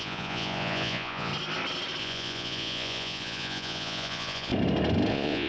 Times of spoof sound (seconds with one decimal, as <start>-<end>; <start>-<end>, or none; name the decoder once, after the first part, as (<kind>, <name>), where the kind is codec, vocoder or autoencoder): 0.0-1.3 (vocoder, Vocos); 2.0-4.5; 5.1-5.5